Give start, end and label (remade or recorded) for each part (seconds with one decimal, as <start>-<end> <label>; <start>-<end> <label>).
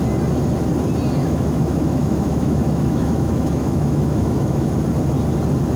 0.0-1.2 recorded; 1.2-4.7 remade; 4.7-5.8 recorded